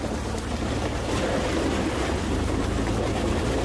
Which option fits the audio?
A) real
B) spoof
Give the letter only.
A